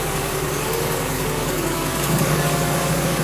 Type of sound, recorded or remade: remade